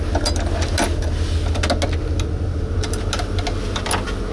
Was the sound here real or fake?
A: real